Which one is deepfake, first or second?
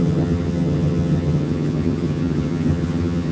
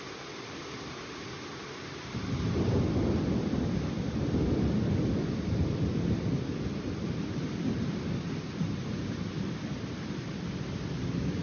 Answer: first